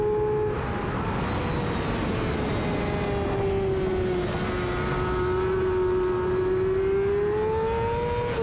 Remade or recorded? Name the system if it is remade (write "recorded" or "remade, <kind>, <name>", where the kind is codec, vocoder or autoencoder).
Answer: recorded